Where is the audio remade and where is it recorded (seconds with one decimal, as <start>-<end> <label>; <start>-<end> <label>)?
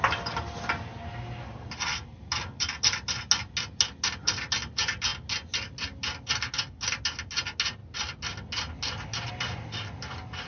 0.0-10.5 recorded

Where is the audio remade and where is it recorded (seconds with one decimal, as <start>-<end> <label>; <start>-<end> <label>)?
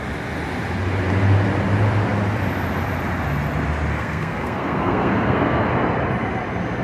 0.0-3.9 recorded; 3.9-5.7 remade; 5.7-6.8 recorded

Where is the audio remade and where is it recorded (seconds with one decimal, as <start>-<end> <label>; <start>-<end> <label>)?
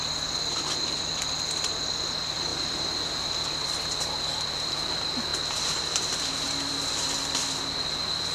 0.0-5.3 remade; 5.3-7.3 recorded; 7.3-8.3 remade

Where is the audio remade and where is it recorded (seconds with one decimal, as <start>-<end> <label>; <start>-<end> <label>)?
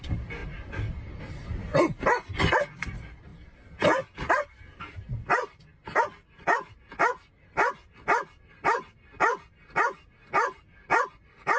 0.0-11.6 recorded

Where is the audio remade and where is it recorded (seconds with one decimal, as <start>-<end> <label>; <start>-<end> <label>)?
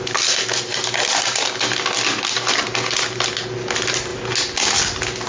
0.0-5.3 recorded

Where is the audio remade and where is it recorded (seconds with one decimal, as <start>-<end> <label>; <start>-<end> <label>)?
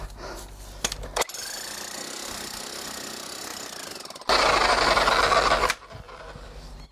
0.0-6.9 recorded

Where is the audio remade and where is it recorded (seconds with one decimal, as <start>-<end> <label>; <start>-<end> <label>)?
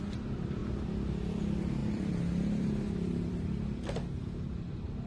0.0-1.8 recorded; 1.8-5.1 remade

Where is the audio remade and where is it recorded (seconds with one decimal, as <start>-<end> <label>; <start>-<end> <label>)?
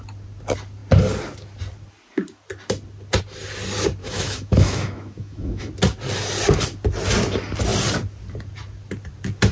0.0-4.0 recorded; 4.0-5.7 remade; 5.7-9.5 recorded